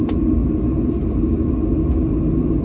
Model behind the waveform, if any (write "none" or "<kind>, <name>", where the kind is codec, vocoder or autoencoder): none